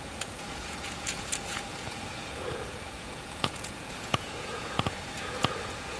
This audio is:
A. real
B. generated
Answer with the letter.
B